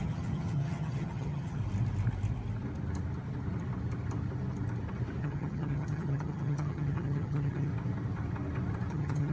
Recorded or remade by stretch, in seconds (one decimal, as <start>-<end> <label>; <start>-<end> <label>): 0.0-1.6 remade; 1.6-5.2 recorded; 5.2-7.7 remade; 7.7-8.9 recorded; 8.9-9.3 remade